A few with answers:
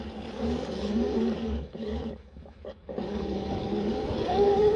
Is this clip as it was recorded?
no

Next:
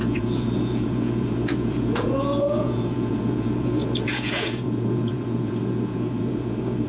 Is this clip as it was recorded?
no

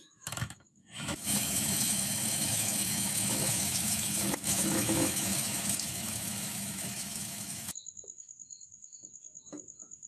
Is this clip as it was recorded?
no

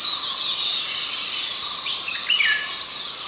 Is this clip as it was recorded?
yes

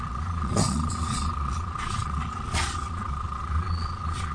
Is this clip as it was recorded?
no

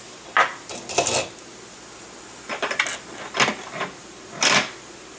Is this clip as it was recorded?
yes